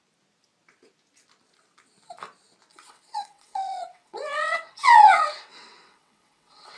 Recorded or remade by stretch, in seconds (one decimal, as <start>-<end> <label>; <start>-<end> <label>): 0.0-2.7 recorded; 2.7-6.8 remade